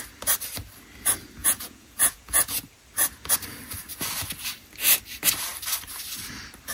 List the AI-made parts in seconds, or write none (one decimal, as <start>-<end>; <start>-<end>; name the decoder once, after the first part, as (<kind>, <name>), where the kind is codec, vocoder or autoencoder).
1.4-2.6 (vocoder, Vocos)